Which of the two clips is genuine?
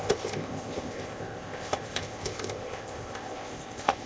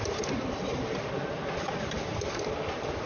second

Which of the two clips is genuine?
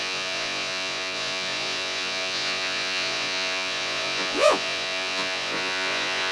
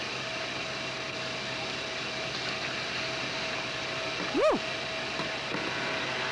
second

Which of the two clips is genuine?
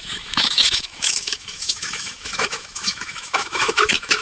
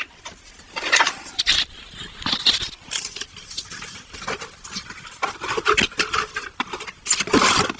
second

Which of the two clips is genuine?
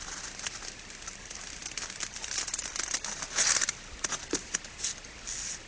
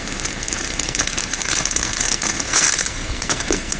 first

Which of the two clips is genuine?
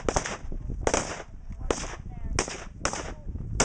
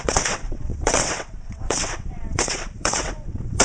first